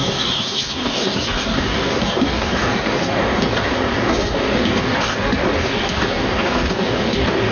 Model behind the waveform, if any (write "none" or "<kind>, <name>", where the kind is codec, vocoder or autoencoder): codec, DAC